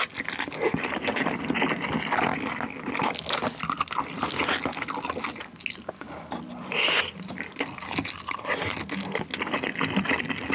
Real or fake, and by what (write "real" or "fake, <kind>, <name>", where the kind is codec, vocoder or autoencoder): real